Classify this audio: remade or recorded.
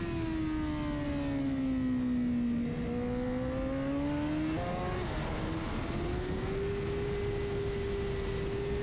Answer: recorded